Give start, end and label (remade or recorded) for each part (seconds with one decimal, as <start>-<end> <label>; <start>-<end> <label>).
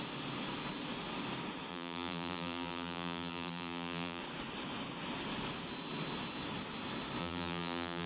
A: 0.0-1.7 recorded; 1.7-4.2 remade; 4.2-7.2 recorded; 7.2-8.1 remade